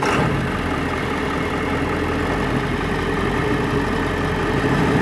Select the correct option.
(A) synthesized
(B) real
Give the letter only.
B